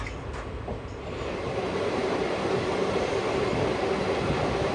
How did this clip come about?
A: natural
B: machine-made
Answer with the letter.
A